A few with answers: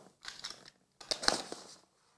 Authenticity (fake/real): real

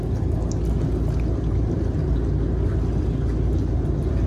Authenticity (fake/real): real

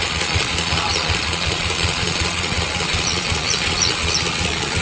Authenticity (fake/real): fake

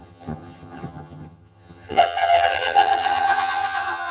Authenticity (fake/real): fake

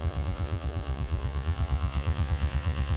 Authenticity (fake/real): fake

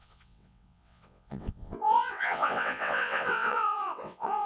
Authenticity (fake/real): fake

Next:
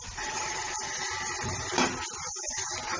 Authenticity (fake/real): real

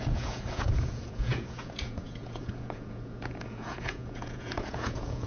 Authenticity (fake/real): fake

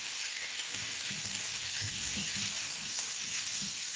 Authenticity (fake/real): fake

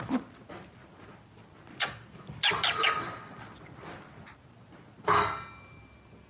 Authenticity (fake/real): real